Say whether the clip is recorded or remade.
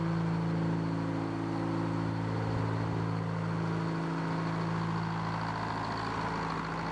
recorded